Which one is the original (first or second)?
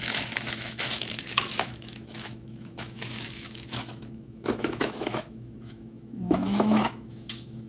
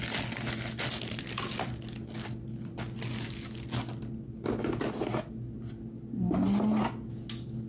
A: second